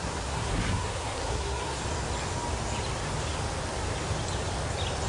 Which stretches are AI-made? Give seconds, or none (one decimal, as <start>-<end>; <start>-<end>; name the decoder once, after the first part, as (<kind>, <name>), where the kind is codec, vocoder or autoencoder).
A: 0.0-1.8 (codec, SNAC)